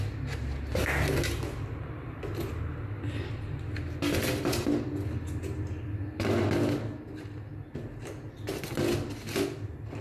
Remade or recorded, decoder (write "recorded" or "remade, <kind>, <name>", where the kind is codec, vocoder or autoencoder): recorded